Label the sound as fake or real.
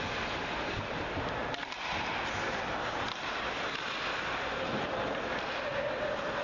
real